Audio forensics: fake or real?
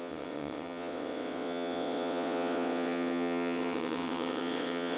fake